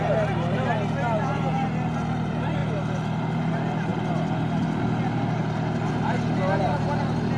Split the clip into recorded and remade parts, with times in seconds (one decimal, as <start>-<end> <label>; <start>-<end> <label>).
0.0-7.4 recorded